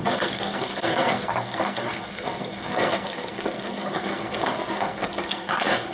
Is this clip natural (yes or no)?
no